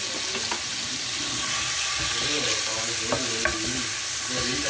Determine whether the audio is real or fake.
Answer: real